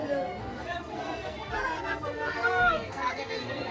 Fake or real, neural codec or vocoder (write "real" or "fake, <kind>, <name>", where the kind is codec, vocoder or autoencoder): fake, codec, SNAC